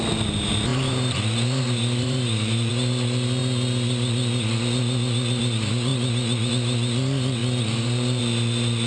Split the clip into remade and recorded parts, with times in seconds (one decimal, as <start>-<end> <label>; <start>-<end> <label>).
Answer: 0.0-0.7 recorded; 0.7-2.7 remade; 2.7-7.4 recorded; 7.4-8.2 remade; 8.2-8.9 recorded